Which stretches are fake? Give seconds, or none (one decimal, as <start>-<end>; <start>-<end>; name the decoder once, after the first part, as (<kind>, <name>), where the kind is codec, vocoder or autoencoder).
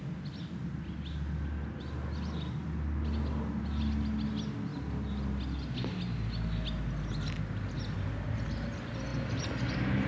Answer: none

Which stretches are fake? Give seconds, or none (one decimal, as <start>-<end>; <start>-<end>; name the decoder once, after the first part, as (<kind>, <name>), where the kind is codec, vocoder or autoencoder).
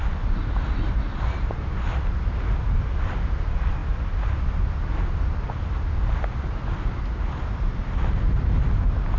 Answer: none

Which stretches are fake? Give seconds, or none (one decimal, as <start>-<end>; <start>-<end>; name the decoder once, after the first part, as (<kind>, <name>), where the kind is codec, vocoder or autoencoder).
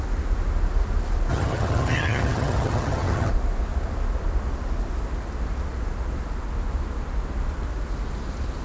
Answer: 1.3-3.3 (vocoder, HiFi-GAN)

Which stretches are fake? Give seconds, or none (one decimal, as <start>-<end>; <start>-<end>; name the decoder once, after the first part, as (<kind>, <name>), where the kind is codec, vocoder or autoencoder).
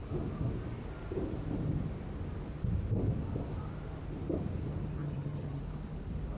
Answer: 5.0-5.6 (vocoder, HiFi-GAN)